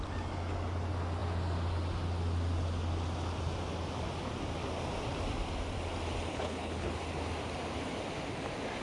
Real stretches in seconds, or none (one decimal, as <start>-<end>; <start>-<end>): 0.0-6.3; 6.9-8.8